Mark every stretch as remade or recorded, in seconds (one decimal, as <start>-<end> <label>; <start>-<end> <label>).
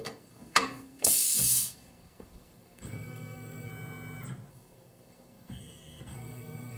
0.0-3.7 remade; 3.7-4.5 recorded; 4.5-6.8 remade